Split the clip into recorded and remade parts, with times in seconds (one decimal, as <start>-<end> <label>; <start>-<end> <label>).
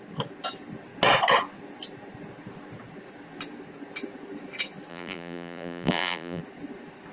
0.0-4.9 recorded; 4.9-6.4 remade; 6.4-7.1 recorded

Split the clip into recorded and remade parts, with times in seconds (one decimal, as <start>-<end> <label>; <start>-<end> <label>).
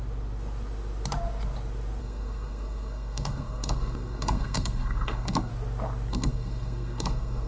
0.0-2.0 recorded; 2.0-5.5 remade; 5.5-6.1 recorded; 6.1-7.5 remade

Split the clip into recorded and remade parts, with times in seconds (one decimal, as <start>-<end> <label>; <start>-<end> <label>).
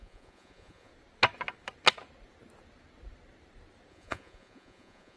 0.0-0.9 remade; 0.9-3.9 recorded; 3.9-5.2 remade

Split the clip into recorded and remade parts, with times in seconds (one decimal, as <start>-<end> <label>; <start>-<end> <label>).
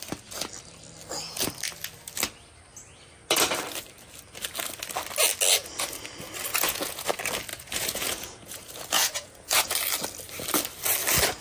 0.0-6.5 recorded; 6.5-7.1 remade; 7.1-7.5 recorded; 7.5-9.7 remade; 9.7-11.4 recorded